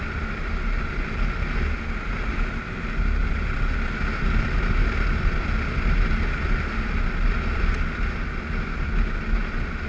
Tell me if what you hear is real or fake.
real